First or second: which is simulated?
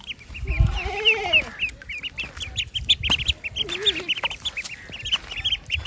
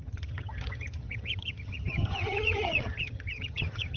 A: second